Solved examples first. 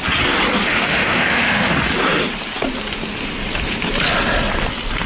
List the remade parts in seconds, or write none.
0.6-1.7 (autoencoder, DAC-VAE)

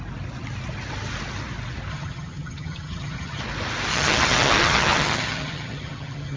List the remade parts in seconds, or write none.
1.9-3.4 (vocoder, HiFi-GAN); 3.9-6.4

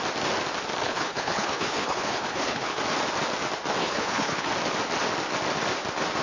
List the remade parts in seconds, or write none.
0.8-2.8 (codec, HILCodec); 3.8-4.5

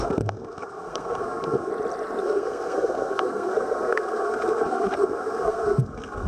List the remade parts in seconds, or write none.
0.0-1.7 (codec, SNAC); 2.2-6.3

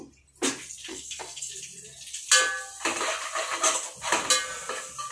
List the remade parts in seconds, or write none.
0.9-1.5 (codec, SNAC)